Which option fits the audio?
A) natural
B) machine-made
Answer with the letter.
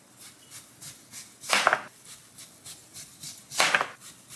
A